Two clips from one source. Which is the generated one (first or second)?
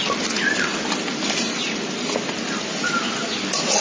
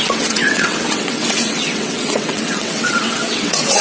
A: second